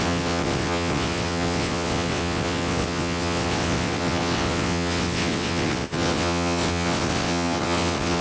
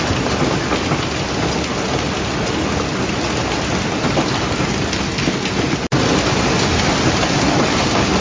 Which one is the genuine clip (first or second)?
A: second